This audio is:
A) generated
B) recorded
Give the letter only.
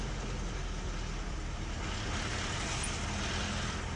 B